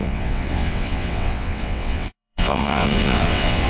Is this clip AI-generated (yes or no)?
yes